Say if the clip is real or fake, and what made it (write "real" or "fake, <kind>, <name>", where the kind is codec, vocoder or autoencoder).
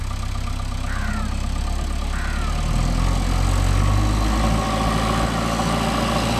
real